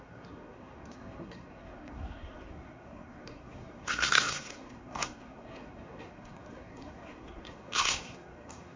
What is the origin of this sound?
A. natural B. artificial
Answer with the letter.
B